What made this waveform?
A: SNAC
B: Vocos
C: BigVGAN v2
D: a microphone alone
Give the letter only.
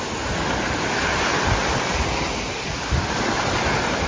D